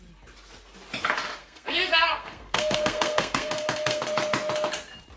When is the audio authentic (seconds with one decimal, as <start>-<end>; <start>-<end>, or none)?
0.0-1.4; 4.0-5.2